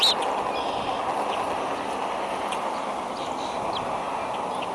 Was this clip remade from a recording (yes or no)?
no